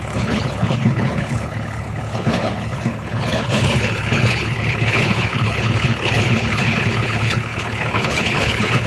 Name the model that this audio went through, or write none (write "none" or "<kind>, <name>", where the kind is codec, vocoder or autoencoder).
codec, HILCodec